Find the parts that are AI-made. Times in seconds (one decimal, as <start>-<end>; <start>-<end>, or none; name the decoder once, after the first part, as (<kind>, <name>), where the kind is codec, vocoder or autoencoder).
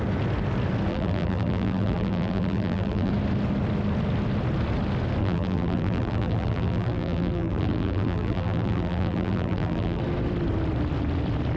0.9-3.1 (vocoder, BigVGAN v2); 5.2-10.0